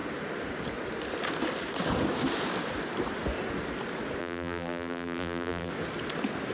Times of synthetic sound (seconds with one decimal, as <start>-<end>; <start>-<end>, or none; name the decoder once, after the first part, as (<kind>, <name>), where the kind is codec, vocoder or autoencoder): 4.2-5.7 (vocoder, BigVGAN v2)